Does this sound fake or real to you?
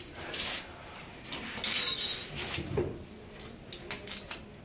real